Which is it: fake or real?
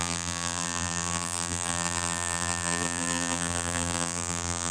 fake